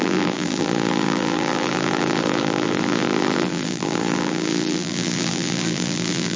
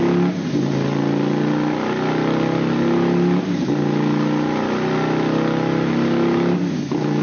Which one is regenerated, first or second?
first